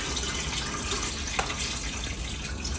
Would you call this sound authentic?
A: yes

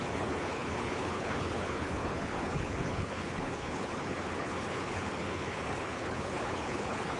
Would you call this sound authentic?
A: no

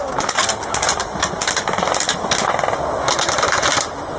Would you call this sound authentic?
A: yes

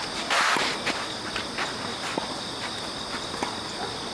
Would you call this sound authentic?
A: yes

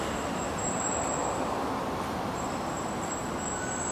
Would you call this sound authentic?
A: yes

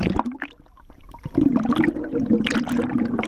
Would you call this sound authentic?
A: yes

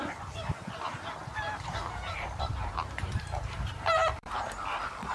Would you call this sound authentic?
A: no